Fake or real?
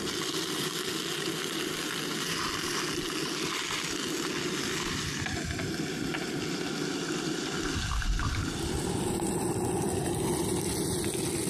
real